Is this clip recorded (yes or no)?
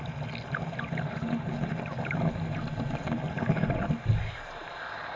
yes